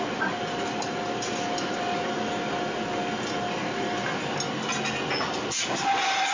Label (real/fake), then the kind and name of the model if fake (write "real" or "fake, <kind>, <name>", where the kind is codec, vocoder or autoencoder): real